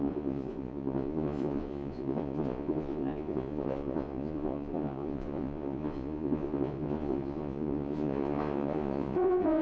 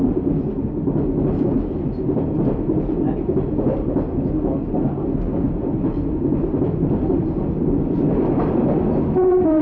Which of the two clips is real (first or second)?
second